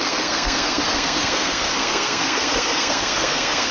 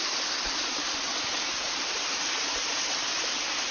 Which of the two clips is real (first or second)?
second